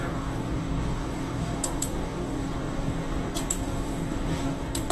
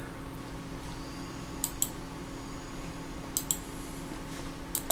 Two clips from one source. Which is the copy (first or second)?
first